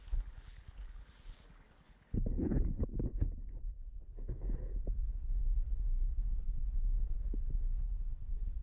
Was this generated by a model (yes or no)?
yes